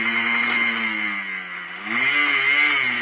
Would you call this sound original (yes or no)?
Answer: yes